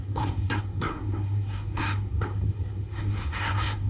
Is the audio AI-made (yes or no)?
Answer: yes